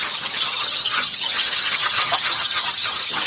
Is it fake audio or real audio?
fake